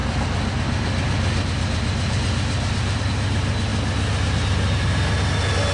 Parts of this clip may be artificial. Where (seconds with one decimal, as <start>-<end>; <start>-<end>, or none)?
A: none